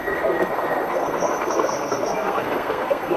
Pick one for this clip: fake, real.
fake